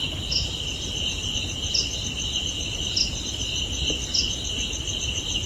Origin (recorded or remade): recorded